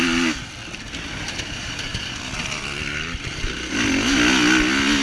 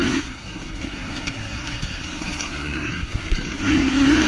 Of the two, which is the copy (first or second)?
second